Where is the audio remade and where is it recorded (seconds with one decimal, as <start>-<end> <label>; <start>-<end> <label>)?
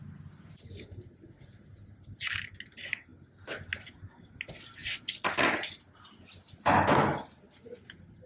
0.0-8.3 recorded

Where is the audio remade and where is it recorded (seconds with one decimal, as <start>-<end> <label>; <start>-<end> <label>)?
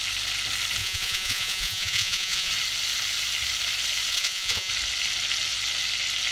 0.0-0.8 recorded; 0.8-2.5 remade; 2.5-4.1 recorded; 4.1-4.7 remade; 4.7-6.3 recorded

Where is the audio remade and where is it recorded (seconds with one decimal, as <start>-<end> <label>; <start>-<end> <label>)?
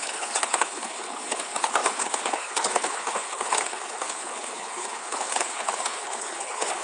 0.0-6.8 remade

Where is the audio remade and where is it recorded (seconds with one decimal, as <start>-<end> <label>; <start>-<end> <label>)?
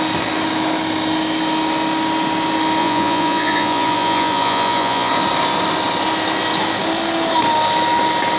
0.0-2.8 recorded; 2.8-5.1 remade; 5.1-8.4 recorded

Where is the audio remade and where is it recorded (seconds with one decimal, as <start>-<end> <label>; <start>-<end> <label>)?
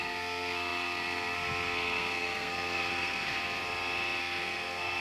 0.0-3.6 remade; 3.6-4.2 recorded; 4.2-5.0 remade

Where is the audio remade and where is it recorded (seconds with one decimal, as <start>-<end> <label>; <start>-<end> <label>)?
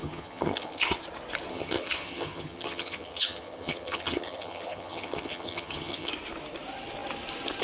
0.0-1.0 remade; 1.0-1.5 recorded; 1.5-6.1 remade; 6.1-7.6 recorded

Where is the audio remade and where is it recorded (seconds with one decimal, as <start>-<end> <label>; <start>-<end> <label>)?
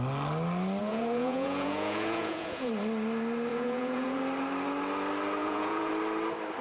0.0-0.8 recorded; 0.8-2.7 remade; 2.7-3.5 recorded; 3.5-4.2 remade; 4.2-5.4 recorded; 5.4-5.9 remade; 5.9-6.6 recorded